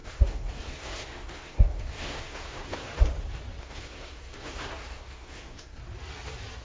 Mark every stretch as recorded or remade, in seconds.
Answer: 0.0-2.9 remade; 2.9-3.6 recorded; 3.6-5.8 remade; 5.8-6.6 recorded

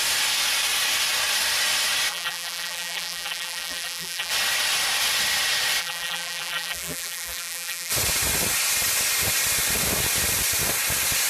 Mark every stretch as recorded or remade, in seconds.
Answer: 0.0-2.1 recorded; 2.1-4.3 remade; 4.3-5.8 recorded; 5.8-7.9 remade; 7.9-11.3 recorded

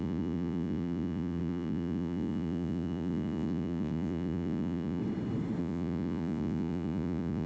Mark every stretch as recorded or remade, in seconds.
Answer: 0.0-5.0 remade; 5.0-5.6 recorded; 5.6-7.5 remade

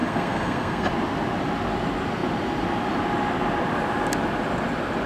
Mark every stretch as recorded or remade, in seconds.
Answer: 0.0-0.9 remade; 0.9-5.1 recorded

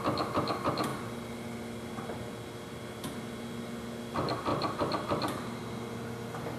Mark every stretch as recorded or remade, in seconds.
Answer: 0.0-4.5 recorded; 4.5-5.6 remade; 5.6-6.6 recorded

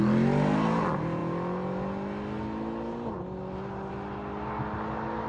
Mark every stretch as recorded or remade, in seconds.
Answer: 0.0-5.3 recorded

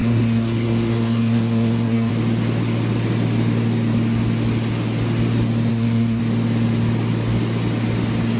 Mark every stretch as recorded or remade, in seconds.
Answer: 0.0-2.1 remade; 2.1-5.7 recorded; 5.7-6.2 remade; 6.2-8.4 recorded